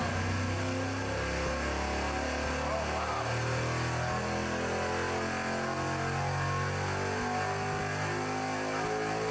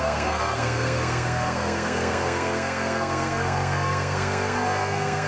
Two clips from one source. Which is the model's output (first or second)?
second